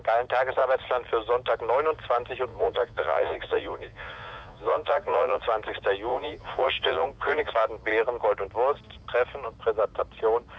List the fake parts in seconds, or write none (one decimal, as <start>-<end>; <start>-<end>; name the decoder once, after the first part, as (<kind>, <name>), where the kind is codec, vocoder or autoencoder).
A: 2.5-5.4 (vocoder, Vocos); 6.1-7.5